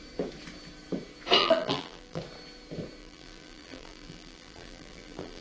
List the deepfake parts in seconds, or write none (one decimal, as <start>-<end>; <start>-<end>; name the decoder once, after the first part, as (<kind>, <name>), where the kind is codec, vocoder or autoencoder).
1.4-2.2 (vocoder, BigVGAN v2); 3.0-5.4